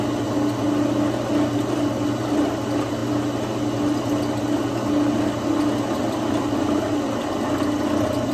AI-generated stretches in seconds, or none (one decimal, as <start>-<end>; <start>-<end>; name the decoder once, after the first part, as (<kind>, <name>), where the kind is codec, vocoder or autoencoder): none